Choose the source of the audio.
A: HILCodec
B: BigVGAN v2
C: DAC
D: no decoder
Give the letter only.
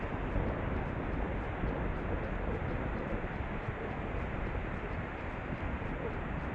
D